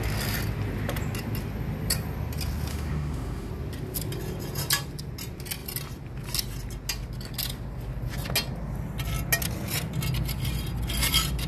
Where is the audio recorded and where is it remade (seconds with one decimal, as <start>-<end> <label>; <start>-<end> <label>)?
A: 0.0-2.7 recorded; 2.7-3.5 remade; 3.5-11.5 recorded